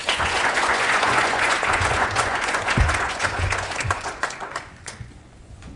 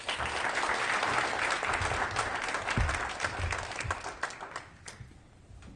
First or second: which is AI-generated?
first